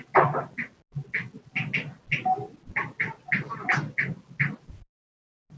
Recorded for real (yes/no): yes